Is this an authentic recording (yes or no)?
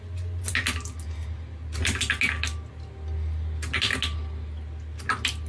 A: yes